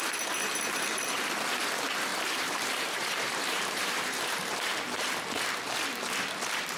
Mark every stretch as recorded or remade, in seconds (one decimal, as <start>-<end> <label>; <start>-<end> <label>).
0.0-2.1 recorded; 2.1-6.0 remade; 6.0-6.8 recorded